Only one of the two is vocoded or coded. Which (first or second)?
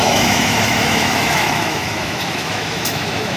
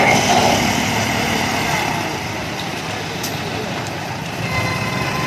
first